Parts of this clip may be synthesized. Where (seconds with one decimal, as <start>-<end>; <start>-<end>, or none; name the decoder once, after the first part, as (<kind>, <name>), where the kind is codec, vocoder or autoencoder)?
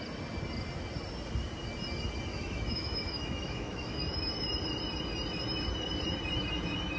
2.3-4.0 (autoencoder, DAC-VAE)